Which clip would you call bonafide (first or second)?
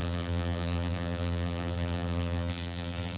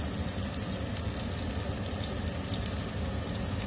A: second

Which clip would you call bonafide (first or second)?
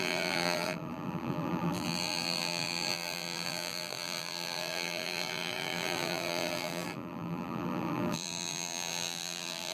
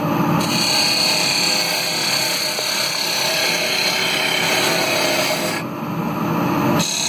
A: second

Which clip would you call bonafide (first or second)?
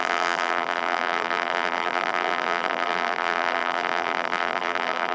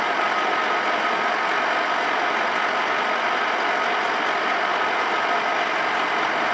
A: second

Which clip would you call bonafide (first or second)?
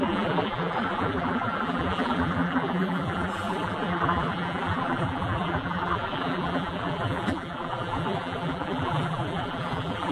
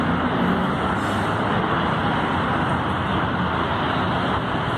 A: second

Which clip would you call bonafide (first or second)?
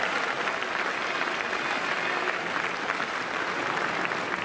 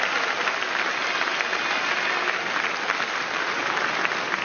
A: second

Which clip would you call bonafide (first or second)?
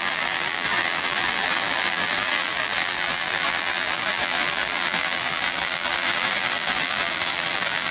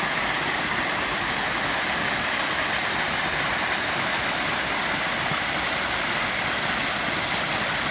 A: second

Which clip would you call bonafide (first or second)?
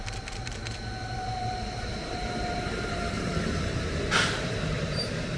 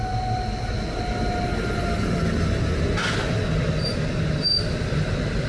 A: second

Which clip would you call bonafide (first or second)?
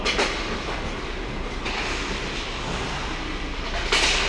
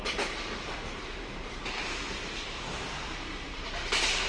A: first